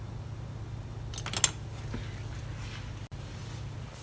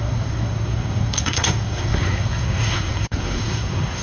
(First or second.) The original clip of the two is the first